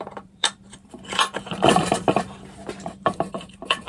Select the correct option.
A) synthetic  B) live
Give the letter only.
A